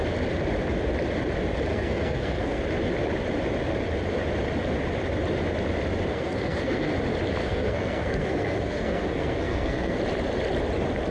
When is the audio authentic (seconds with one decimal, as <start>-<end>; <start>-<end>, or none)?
0.0-1.7; 2.6-6.1; 6.9-7.4; 10.0-11.1

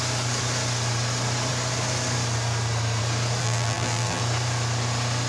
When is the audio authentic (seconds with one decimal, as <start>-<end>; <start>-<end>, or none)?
0.0-3.4; 4.2-5.3

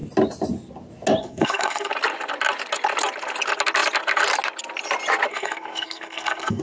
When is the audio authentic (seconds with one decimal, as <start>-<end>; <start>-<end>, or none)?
0.0-1.2; 1.9-5.3

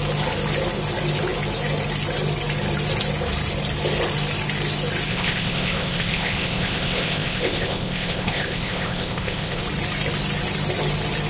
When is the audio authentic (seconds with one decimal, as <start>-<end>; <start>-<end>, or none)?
0.0-5.1; 9.6-11.3

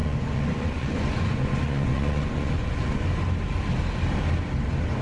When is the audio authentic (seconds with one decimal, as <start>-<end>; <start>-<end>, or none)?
3.0-5.0

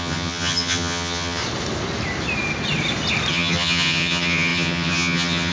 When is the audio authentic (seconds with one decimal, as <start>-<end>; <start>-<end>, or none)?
1.4-3.3

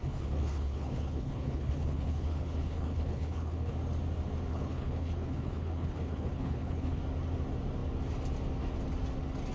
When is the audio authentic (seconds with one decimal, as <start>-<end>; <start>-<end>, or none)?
3.7-4.5; 7.0-9.5